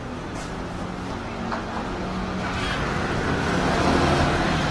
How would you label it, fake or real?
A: real